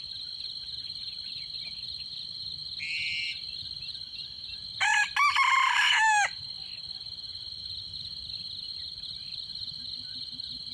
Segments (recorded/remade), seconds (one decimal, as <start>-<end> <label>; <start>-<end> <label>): 0.0-10.7 recorded